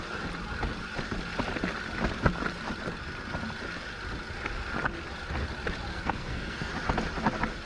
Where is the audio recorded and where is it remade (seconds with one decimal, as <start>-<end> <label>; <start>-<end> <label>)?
0.0-5.9 recorded; 5.9-6.7 remade; 6.7-7.7 recorded